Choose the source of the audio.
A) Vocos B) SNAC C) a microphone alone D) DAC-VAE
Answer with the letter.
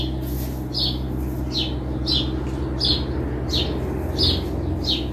C